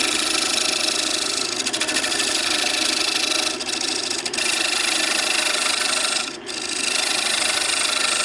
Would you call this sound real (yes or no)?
no